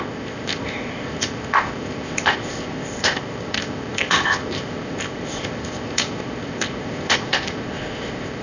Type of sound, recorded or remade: remade